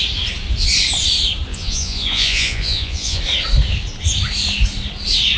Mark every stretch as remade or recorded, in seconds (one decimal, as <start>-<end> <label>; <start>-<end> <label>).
0.0-1.5 recorded; 1.5-3.2 remade; 3.2-5.4 recorded